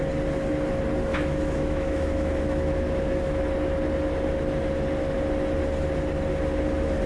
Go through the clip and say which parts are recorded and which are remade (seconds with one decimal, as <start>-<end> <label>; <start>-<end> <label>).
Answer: 0.0-1.1 recorded; 1.1-3.4 remade; 3.4-7.1 recorded